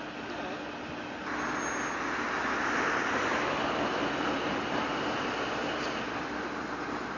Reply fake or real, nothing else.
real